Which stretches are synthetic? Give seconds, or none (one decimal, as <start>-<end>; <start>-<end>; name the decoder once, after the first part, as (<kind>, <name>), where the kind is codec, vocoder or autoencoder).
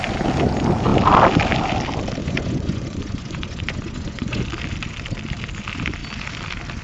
2.2-4.4 (vocoder, Vocos)